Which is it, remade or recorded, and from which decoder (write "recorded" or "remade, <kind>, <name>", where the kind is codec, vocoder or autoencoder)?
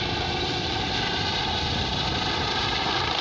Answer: recorded